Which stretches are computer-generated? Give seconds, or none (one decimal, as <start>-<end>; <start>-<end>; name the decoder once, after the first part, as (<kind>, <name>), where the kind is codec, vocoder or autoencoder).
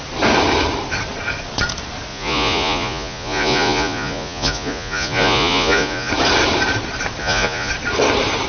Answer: 2.1-6.1 (vocoder, Vocos); 7.2-7.7